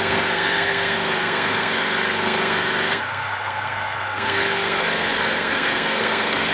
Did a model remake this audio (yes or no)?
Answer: yes